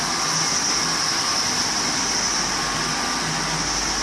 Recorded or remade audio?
recorded